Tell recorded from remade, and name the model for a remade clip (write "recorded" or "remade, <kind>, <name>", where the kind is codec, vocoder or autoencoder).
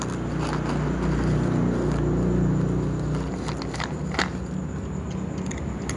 recorded